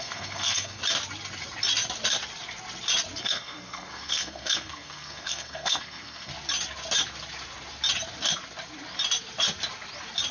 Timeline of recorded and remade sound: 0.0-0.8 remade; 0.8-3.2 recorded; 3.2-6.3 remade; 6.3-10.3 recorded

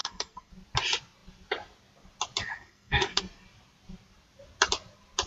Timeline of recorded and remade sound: 0.0-0.5 remade; 0.5-2.4 recorded; 2.4-3.2 remade; 3.2-5.3 recorded

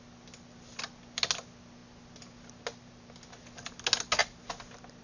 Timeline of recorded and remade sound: 0.0-5.0 recorded

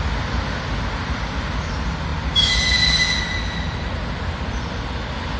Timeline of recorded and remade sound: 0.0-5.4 recorded

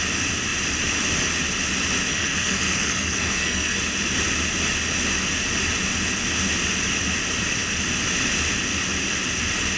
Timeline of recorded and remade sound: 0.0-2.1 recorded; 2.1-3.8 remade; 3.8-9.8 recorded

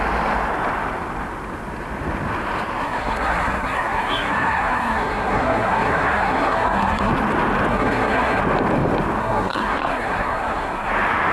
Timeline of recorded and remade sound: 0.0-2.8 recorded; 2.8-7.1 remade; 7.1-7.7 recorded; 7.7-8.4 remade; 8.4-9.2 recorded; 9.2-10.9 remade; 10.9-11.3 recorded